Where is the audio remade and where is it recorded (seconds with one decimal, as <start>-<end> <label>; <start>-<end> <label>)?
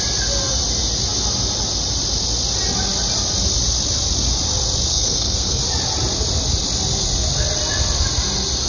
0.0-4.9 recorded; 4.9-5.6 remade; 5.6-8.7 recorded